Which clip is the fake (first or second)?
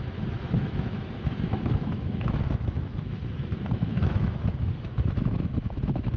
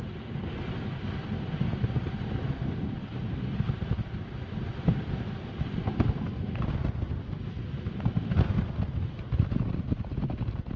first